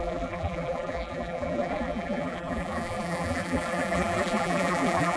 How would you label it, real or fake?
fake